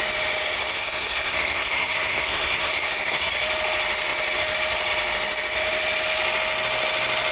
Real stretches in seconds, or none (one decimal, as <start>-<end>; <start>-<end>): 0.0-0.7; 3.3-7.3